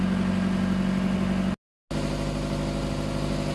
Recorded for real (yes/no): yes